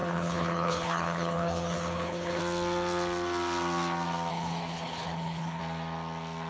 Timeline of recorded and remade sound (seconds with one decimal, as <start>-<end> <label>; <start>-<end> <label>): 0.0-2.4 remade; 2.4-4.3 recorded; 4.3-5.6 remade; 5.6-6.5 recorded